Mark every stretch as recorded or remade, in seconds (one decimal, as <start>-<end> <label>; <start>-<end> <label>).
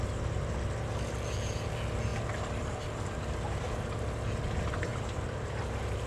0.0-2.1 recorded; 2.1-3.7 remade; 3.7-4.9 recorded; 4.9-5.6 remade; 5.6-6.1 recorded